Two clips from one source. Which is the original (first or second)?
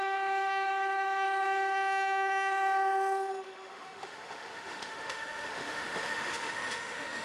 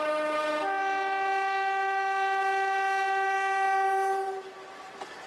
second